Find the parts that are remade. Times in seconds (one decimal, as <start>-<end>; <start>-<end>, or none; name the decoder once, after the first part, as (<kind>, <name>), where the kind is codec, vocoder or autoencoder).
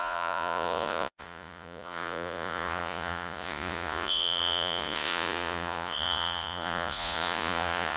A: 0.0-8.0 (vocoder, Vocos)